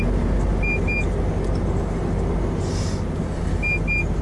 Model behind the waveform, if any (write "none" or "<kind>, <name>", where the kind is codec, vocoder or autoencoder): none